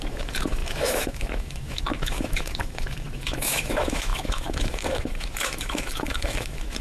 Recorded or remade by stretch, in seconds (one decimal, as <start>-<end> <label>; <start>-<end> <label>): 0.0-6.8 remade